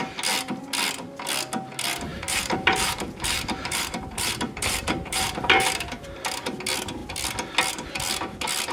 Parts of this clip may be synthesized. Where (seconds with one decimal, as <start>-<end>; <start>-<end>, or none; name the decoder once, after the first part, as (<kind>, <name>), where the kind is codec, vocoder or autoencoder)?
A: 2.1-6.6 (vocoder, BigVGAN v2)